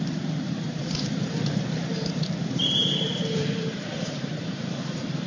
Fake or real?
fake